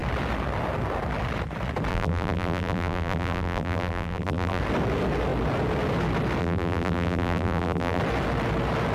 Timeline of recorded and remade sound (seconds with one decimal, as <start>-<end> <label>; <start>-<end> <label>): 0.0-1.9 recorded; 1.9-4.6 remade; 4.6-6.4 recorded; 6.4-8.0 remade; 8.0-8.9 recorded